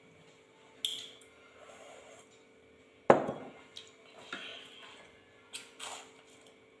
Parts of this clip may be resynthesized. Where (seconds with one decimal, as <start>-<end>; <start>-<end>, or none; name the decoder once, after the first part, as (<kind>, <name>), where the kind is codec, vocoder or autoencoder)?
4.5-5.8 (vocoder, Vocos)